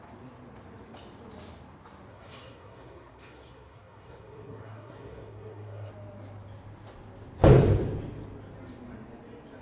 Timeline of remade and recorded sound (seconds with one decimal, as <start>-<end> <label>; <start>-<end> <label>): 0.0-2.1 recorded; 2.1-5.9 remade; 5.9-9.6 recorded